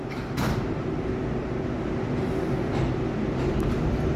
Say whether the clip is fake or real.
real